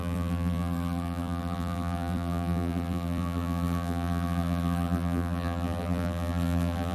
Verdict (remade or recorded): remade